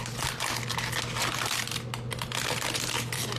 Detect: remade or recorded recorded